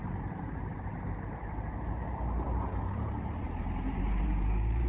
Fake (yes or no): yes